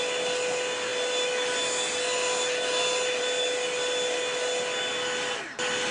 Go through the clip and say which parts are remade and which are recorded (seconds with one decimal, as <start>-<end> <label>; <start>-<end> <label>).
0.0-5.9 recorded

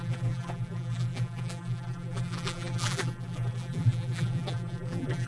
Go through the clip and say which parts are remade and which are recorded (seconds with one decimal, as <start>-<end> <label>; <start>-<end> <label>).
0.0-5.3 remade

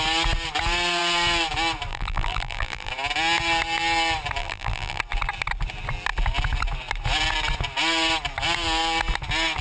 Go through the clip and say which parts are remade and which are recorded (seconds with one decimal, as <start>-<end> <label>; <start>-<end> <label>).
0.0-1.9 recorded; 1.9-2.9 remade; 2.9-4.4 recorded; 4.4-5.0 remade; 5.0-9.6 recorded